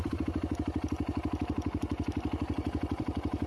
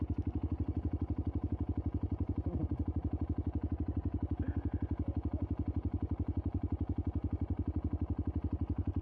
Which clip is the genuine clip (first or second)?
second